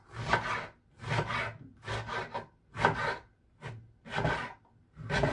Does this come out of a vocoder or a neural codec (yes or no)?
no